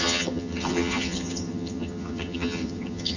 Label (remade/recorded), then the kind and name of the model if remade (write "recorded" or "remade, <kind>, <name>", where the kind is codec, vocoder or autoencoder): remade, vocoder, HiFi-GAN